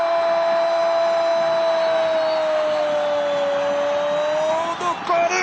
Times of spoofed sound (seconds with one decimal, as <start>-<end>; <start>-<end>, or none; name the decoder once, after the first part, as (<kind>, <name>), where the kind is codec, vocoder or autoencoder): none

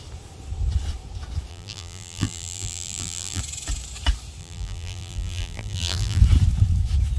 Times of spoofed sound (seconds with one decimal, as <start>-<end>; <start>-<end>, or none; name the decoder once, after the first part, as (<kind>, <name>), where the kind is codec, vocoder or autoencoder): 1.5-3.4 (vocoder, BigVGAN v2); 4.4-6.2

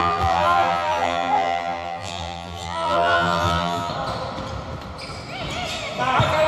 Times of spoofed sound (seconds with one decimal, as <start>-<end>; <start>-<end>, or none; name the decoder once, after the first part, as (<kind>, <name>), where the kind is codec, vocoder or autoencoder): 0.0-3.9 (vocoder, BigVGAN v2)